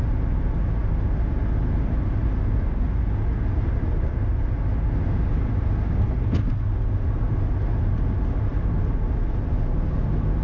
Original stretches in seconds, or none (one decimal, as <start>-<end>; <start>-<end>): 0.0-10.4